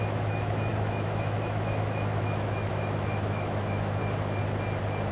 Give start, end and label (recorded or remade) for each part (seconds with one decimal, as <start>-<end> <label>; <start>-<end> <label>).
0.0-4.0 remade; 4.0-5.1 recorded